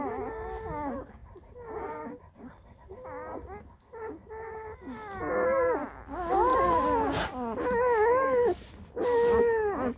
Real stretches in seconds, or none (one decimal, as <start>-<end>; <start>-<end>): 0.0-1.2; 2.8-6.5; 7.2-10.0